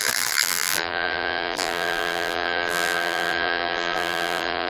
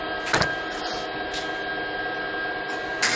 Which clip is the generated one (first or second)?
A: first